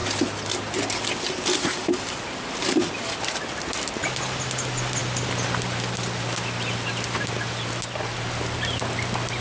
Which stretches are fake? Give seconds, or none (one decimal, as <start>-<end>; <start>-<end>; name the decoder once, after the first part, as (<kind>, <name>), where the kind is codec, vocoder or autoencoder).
none